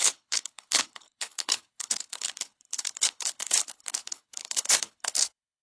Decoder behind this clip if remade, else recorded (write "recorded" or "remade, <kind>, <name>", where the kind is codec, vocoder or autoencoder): remade, codec, HILCodec